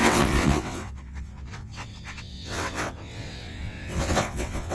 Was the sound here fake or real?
fake